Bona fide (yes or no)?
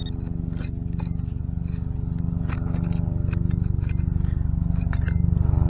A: yes